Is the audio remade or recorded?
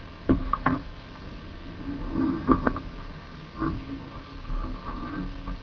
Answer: remade